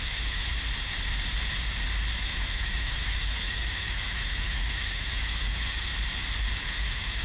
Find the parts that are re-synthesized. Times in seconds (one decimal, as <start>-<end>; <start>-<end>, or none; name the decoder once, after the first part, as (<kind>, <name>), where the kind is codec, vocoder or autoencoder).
0.0-0.5 (autoencoder, DAC-VAE); 2.2-5.9; 6.6-7.2